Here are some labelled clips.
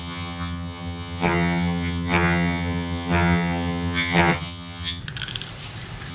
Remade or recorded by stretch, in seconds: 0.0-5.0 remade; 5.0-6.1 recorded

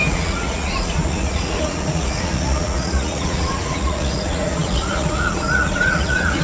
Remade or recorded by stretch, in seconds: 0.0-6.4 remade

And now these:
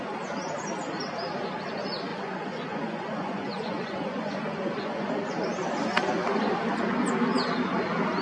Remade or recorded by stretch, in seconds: 0.0-2.1 recorded; 2.1-5.1 remade; 5.1-8.2 recorded